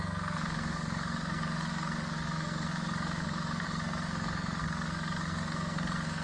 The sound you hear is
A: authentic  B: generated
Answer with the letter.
B